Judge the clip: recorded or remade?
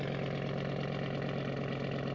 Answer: recorded